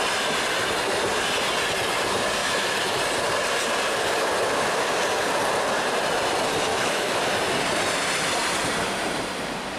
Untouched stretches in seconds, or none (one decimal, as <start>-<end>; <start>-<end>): 0.0-2.4; 3.0-6.7; 7.2-9.8